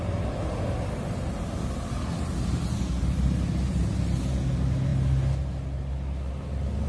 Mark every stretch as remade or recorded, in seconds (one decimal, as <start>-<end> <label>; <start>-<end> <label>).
0.0-6.9 recorded